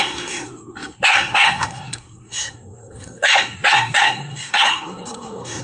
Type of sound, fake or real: fake